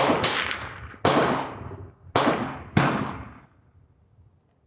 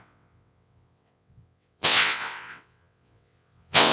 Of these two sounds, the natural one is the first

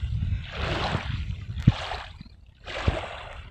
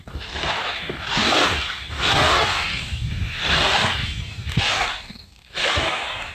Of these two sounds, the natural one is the first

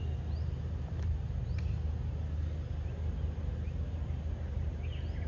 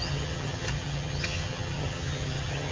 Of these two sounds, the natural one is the first